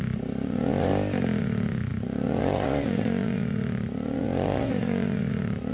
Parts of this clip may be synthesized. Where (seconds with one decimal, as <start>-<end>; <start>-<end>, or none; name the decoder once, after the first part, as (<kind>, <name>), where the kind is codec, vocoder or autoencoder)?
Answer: 0.0-0.9 (vocoder, Vocos); 1.4-5.7